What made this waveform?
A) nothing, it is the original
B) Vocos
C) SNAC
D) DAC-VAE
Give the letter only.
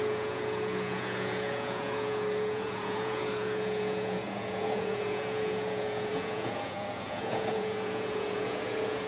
B